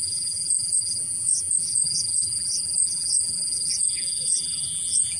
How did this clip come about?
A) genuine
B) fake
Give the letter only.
B